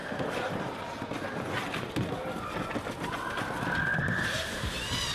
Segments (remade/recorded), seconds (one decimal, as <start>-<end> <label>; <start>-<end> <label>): 0.0-5.1 recorded